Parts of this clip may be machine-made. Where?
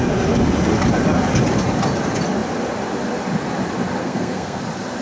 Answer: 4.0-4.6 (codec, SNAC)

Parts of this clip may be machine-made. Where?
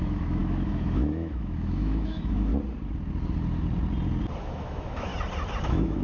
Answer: 0.0-2.5 (autoencoder, DAC-VAE); 4.4-5.1; 5.6-6.0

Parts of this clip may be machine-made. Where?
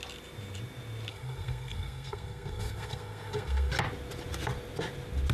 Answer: 1.1-3.7 (codec, SNAC)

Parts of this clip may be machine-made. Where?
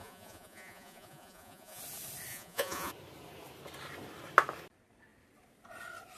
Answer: 0.0-1.8 (vocoder, Vocos); 2.3-2.9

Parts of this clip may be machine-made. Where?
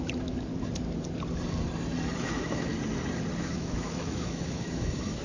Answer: 0.0-0.5 (autoencoder, DAC-VAE); 2.2-2.7; 3.4-5.2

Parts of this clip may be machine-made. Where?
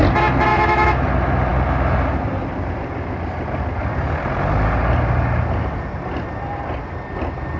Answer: 0.5-1.1 (autoencoder, DAC-VAE)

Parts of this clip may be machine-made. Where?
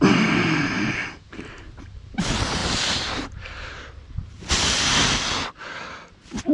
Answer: 1.0-2.2 (vocoder, BigVGAN v2); 2.6-4.8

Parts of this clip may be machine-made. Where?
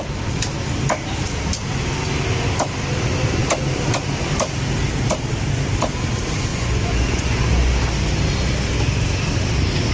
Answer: 6.5-7.8 (vocoder, Vocos)